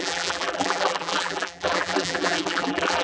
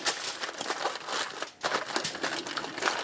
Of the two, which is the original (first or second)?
second